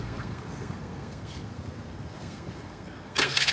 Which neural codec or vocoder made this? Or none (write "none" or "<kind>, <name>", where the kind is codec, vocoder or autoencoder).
codec, SNAC